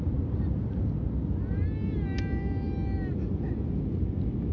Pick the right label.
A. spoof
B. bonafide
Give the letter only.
B